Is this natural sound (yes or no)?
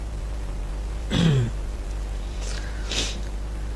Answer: no